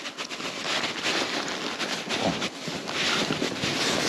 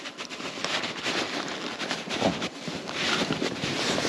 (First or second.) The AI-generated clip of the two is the second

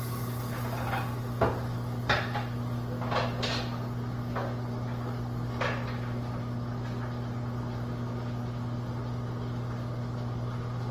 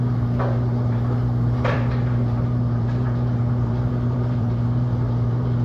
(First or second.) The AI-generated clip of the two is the second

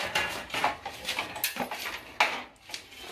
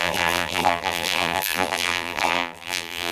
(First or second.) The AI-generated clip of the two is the second